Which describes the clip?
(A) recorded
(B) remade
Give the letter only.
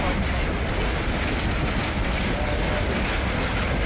A